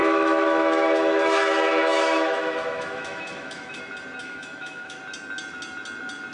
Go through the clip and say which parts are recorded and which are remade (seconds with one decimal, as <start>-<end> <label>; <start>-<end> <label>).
0.0-3.8 remade; 3.8-4.2 recorded; 4.2-5.0 remade; 5.0-6.3 recorded